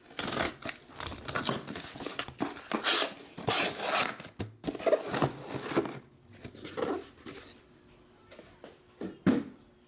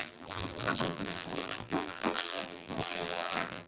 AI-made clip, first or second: second